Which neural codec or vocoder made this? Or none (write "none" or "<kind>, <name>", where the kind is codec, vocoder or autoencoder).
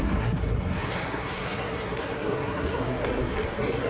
codec, SNAC